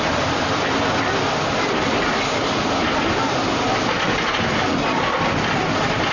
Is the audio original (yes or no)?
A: yes